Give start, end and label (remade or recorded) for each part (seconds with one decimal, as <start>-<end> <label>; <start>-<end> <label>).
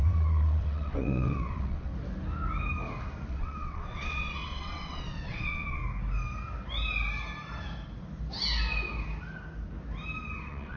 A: 0.0-1.9 remade; 1.9-3.3 recorded; 3.3-5.8 remade; 5.8-10.4 recorded; 10.4-10.8 remade